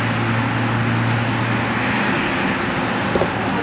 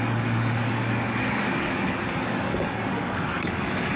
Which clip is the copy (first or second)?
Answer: second